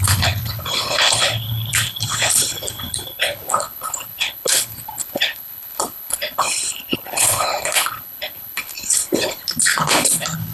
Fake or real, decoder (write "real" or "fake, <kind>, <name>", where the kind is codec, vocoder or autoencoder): fake, codec, HILCodec